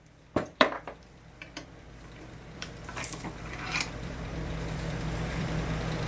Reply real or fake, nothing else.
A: fake